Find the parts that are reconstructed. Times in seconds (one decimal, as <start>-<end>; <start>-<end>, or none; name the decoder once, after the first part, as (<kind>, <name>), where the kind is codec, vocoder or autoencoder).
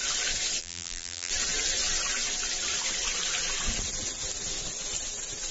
0.6-1.3 (vocoder, BigVGAN v2)